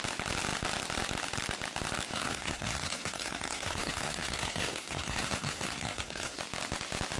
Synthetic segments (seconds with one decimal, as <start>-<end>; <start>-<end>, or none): 2.1-6.4